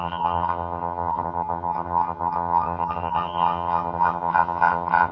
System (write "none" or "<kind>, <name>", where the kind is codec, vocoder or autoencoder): vocoder, HiFi-GAN